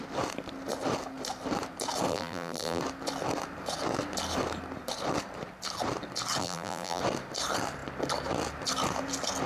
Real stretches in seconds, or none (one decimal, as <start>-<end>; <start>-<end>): 0.0-2.1; 2.8-6.4; 7.0-9.5